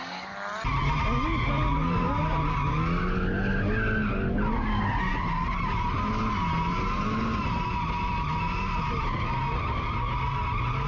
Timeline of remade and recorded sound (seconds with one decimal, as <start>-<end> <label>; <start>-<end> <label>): 0.0-10.9 recorded